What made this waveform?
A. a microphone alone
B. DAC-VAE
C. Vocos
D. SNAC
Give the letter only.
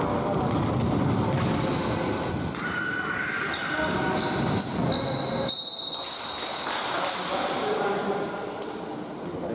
A